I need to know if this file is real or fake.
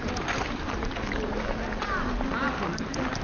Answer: real